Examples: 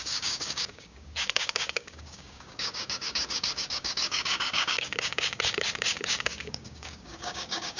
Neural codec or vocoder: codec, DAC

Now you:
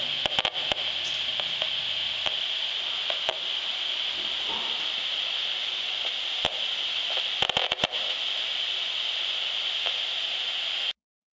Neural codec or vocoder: none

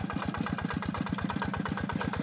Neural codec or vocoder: none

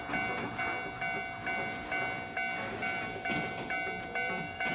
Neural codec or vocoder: none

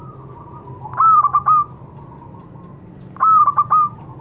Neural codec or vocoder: none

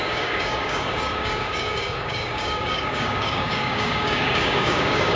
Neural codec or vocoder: codec, DAC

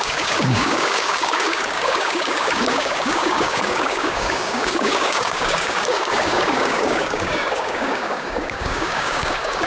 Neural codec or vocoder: codec, DAC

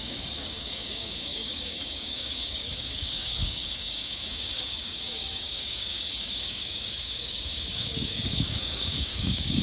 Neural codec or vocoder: codec, DAC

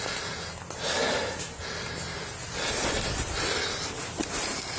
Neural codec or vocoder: none